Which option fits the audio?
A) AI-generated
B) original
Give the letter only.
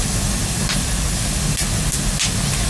B